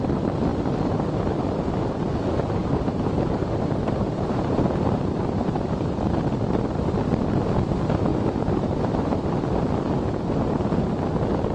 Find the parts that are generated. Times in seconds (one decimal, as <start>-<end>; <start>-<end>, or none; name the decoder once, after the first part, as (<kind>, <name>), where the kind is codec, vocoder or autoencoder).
2.6-5.9 (vocoder, BigVGAN v2); 8.1-10.3